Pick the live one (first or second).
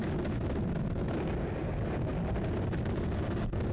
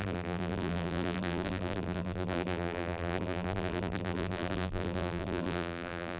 first